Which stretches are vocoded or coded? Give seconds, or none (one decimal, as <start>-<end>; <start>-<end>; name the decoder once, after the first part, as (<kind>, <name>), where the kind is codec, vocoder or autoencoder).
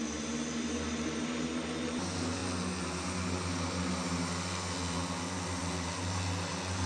none